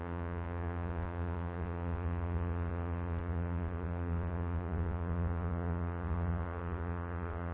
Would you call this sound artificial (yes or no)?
yes